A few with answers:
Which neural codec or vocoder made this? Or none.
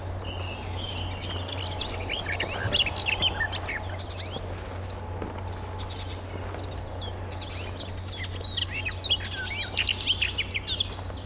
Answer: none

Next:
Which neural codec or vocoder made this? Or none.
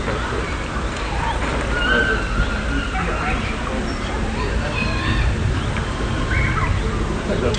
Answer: none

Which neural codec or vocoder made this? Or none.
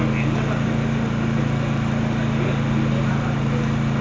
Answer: none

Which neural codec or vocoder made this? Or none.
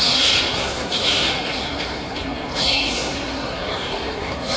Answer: codec, SNAC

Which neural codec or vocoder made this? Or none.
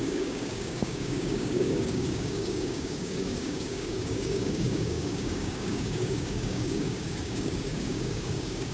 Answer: codec, DAC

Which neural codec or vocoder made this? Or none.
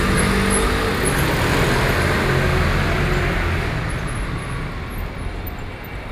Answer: none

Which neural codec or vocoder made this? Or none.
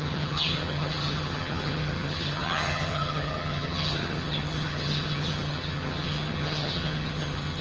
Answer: vocoder, HiFi-GAN